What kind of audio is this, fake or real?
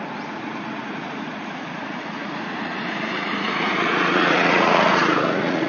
fake